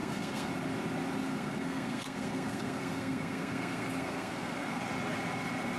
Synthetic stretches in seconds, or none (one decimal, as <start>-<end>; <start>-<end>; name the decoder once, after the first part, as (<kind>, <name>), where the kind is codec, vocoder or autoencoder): 0.0-0.5 (codec, SNAC); 1.3-4.8